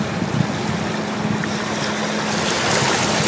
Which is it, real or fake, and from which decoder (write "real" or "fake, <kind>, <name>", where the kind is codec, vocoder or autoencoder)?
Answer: real